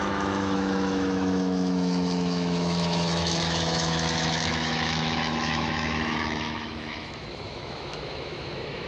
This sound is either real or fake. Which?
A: fake